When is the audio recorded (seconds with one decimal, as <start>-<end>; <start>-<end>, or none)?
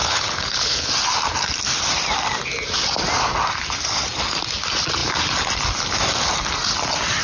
0.9-7.2